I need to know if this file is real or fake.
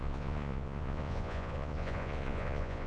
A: fake